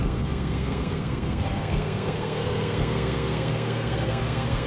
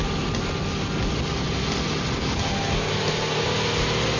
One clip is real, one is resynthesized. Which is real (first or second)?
second